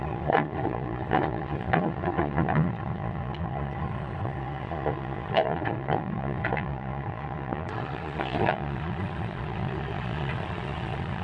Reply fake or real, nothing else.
fake